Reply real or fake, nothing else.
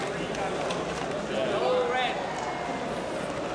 real